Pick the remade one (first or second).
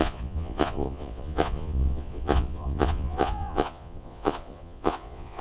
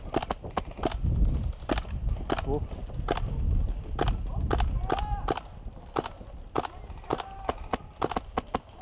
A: first